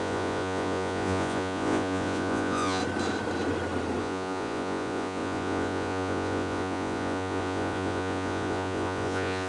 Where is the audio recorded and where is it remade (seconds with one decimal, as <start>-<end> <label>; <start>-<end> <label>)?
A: 0.0-2.8 remade; 2.8-4.0 recorded; 4.0-9.5 remade